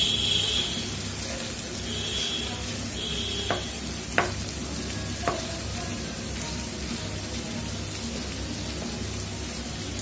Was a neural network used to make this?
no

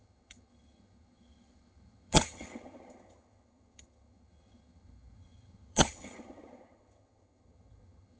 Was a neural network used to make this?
yes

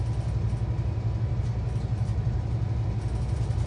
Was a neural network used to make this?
no